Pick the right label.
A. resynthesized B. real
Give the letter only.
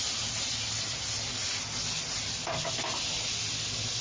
B